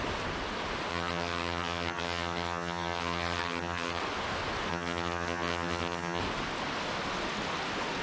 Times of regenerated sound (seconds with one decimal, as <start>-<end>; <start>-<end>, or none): 0.9-4.0; 4.7-6.2